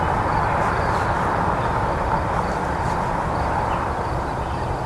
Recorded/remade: remade